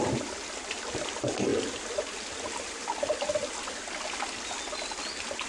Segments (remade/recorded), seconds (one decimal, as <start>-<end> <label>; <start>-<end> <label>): 0.0-5.5 recorded